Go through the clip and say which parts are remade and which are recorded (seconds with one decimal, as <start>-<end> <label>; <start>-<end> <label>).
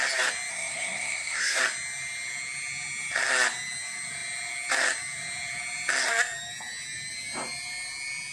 0.0-0.5 recorded; 0.5-1.6 remade; 1.6-8.3 recorded